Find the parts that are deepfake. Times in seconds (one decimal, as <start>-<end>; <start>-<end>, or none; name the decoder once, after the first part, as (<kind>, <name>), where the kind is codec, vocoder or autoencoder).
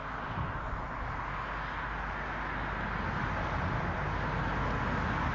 none